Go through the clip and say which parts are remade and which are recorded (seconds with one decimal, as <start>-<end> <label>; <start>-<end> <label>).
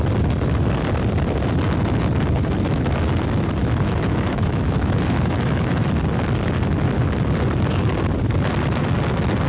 0.0-3.6 recorded; 3.6-5.7 remade; 5.7-9.5 recorded